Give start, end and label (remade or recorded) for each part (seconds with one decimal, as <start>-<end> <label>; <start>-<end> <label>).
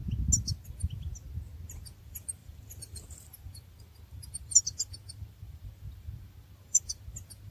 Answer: 0.0-0.7 recorded; 0.7-1.1 remade; 1.1-2.0 recorded; 2.0-7.5 remade